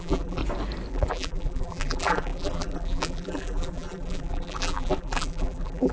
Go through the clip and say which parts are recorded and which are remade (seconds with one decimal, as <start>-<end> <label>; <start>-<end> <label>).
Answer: 0.0-0.4 remade; 0.4-0.9 recorded; 0.9-5.9 remade